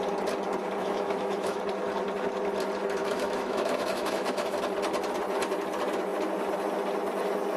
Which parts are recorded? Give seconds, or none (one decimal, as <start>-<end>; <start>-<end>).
0.0-0.8; 1.6-3.0; 4.6-7.6